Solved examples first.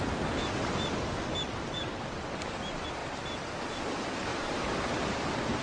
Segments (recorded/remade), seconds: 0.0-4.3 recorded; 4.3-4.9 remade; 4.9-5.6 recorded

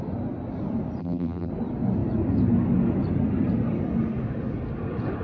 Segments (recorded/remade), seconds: 0.0-1.0 recorded; 1.0-1.5 remade; 1.5-5.2 recorded

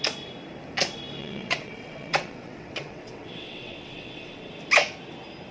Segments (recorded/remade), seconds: 0.0-1.2 recorded; 1.2-4.5 remade; 4.5-5.5 recorded

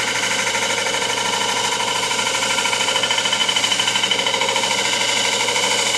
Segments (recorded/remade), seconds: 0.0-0.8 recorded; 0.8-2.6 remade; 2.6-6.0 recorded

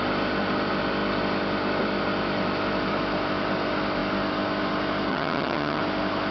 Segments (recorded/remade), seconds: 0.0-5.1 recorded; 5.1-5.8 remade; 5.8-6.3 recorded